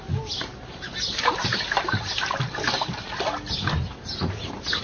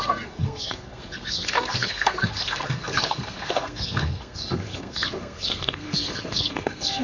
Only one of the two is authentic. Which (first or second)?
first